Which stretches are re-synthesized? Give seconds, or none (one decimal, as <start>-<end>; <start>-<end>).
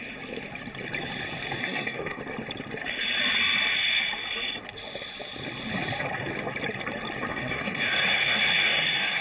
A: 1.6-2.2; 7.3-9.2